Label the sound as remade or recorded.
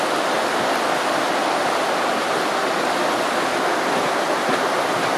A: recorded